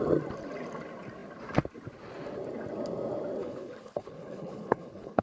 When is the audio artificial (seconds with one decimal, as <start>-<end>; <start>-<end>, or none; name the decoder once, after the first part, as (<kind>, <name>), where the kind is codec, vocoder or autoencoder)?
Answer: 3.4-5.2 (codec, HILCodec)